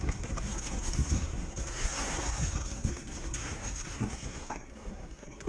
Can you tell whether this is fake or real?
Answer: fake